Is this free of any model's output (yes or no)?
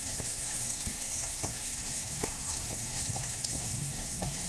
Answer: no